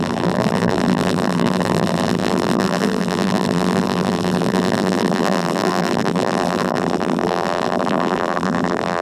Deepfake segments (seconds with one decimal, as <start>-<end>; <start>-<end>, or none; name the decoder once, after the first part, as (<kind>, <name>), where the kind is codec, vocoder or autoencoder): 0.0-9.0 (vocoder, BigVGAN v2)